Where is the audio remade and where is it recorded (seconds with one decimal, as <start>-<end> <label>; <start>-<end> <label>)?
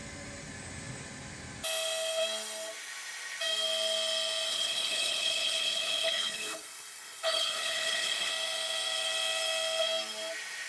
0.0-4.5 recorded; 4.5-8.3 remade; 8.3-10.7 recorded